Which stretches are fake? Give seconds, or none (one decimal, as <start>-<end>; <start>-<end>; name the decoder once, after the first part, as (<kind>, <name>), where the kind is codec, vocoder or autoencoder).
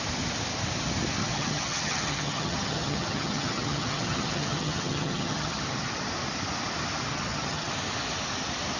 1.2-5.9 (vocoder, HiFi-GAN); 7.1-7.7